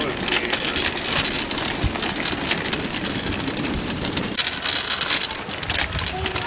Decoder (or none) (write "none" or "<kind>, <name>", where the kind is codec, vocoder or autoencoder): none